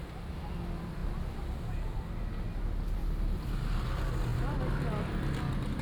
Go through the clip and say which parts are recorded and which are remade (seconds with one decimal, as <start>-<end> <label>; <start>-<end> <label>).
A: 0.0-3.0 recorded; 3.0-3.5 remade; 3.5-5.8 recorded